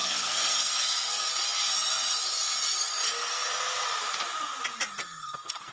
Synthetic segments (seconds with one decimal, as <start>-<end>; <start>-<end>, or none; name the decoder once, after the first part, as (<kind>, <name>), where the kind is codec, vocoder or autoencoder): 0.0-1.3 (codec, SNAC); 2.7-3.5; 5.0-5.7

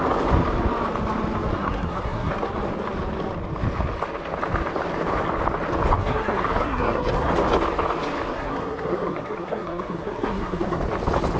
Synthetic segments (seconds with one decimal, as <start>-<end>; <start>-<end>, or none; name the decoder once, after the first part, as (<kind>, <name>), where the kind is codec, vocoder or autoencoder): 1.5-2.3 (codec, SNAC); 6.0-7.3; 8.3-10.8

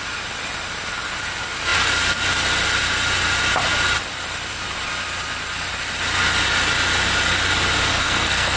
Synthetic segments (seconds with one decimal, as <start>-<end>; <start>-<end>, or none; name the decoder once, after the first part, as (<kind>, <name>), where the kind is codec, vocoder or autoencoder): 7.9-8.6 (codec, SNAC)

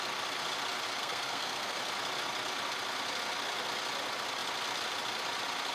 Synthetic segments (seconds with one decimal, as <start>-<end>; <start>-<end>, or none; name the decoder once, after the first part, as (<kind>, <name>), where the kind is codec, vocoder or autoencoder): 1.0-1.8 (codec, SNAC)

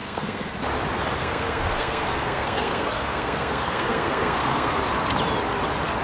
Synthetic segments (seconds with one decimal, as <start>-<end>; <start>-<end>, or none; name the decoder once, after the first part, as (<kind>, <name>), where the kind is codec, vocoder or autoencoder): 0.0-0.5 (codec, SNAC); 1.2-4.8

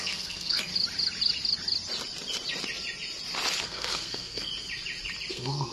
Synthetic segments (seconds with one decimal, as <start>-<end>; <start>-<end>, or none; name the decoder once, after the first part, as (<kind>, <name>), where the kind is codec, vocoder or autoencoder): 0.0-0.7 (codec, SNAC); 3.6-4.5; 5.3-5.7